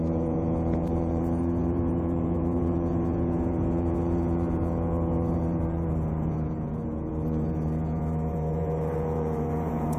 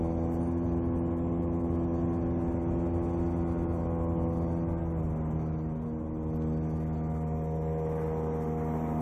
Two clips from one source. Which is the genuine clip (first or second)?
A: second